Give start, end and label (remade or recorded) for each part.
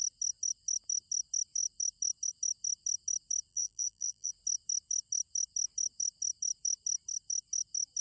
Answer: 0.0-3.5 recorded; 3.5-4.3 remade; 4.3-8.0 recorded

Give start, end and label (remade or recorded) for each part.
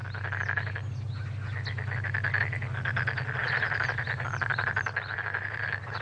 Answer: 0.0-3.4 recorded; 3.4-6.0 remade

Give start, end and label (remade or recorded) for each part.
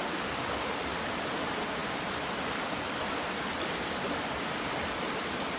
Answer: 0.0-1.8 remade; 1.8-3.0 recorded; 3.0-3.5 remade; 3.5-4.7 recorded; 4.7-5.6 remade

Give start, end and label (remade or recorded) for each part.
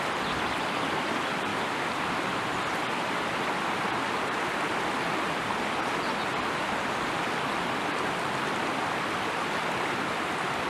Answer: 0.0-10.7 recorded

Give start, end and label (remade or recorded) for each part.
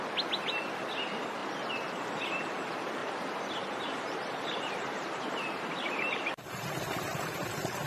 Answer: 0.0-3.0 recorded; 3.0-6.8 remade; 6.8-7.9 recorded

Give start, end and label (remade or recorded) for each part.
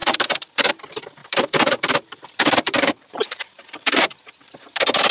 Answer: 0.0-0.7 remade; 0.7-1.2 recorded; 1.2-4.3 remade; 4.3-5.1 recorded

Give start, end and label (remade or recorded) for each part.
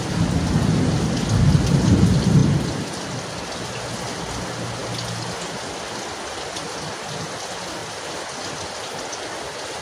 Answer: 0.0-9.8 recorded